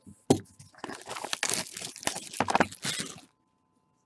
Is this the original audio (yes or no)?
yes